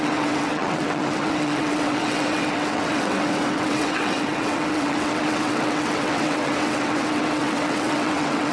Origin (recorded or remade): remade